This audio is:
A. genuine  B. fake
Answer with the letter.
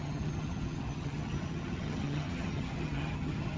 B